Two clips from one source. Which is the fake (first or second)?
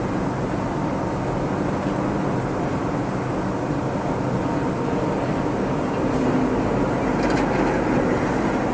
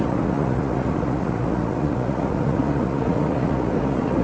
second